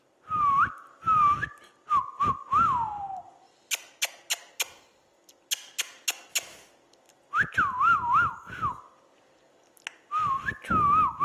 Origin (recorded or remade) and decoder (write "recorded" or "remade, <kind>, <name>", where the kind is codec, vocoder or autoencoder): recorded